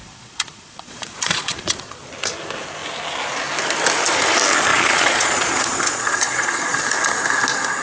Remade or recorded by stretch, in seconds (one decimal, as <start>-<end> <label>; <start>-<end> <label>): 0.0-2.1 remade; 2.1-4.7 recorded; 4.7-6.8 remade; 6.8-7.8 recorded

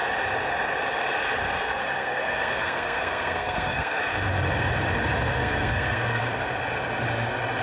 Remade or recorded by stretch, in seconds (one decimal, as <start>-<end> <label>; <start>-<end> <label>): 0.0-1.8 recorded; 1.8-4.0 remade; 4.0-5.4 recorded; 5.4-6.2 remade; 6.2-7.6 recorded

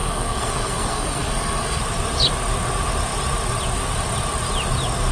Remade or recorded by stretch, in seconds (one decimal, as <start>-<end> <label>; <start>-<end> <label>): 0.0-1.8 remade; 1.8-5.1 recorded

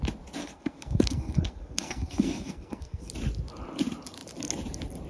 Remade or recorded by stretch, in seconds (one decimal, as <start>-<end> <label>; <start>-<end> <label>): 0.0-0.4 recorded; 0.4-3.1 remade; 3.1-5.1 recorded

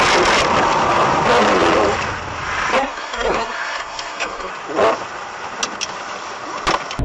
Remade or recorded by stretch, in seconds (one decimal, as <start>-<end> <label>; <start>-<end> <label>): 0.0-2.8 recorded; 2.8-4.5 remade; 4.5-7.0 recorded